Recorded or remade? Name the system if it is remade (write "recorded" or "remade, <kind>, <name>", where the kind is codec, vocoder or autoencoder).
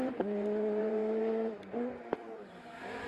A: remade, vocoder, BigVGAN v2